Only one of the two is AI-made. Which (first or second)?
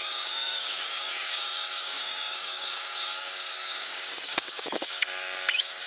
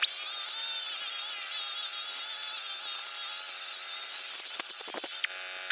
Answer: first